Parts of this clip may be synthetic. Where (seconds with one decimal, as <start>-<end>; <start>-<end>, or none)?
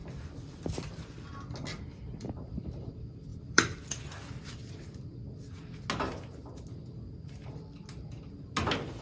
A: 0.0-1.3; 3.3-4.3